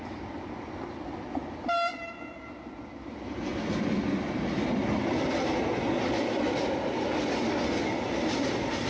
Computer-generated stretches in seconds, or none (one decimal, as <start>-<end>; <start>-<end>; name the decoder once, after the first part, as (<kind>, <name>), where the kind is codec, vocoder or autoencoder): none